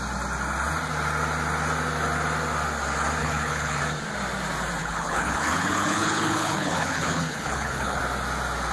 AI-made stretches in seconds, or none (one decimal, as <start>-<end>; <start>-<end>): 3.2-3.8; 4.8-8.0